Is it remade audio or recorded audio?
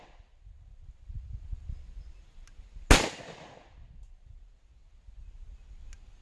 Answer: recorded